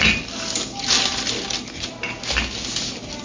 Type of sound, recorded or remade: recorded